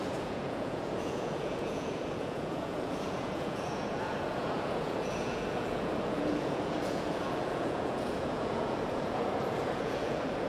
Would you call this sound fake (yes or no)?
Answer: yes